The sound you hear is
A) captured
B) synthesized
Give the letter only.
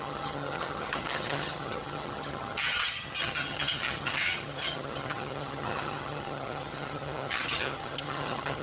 B